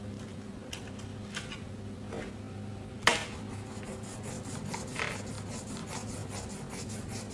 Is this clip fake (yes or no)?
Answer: no